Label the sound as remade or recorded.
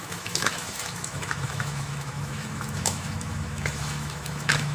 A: remade